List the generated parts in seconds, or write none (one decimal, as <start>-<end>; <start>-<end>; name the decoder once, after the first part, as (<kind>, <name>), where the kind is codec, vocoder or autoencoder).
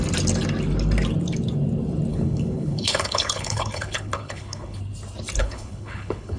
2.1-4.8 (codec, HILCodec); 5.4-6.4